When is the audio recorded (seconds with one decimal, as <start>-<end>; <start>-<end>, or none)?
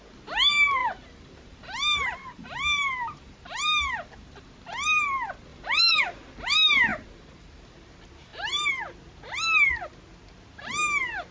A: 0.0-0.8; 4.5-5.5; 6.0-6.9; 7.9-8.3; 8.8-11.3